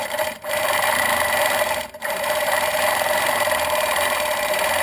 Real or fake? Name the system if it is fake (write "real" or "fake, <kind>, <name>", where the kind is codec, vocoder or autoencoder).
fake, vocoder, BigVGAN v2